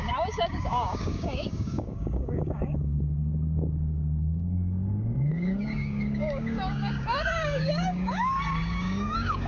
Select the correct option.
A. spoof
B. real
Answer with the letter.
A